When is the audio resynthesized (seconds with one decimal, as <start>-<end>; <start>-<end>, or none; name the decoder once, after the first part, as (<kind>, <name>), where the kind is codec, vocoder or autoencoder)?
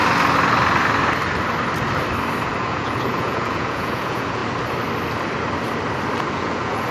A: 2.6-4.4 (vocoder, Vocos); 6.3-6.9